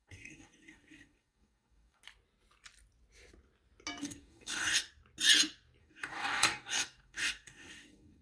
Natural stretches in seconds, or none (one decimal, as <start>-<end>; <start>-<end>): 2.0-4.0; 4.9-5.8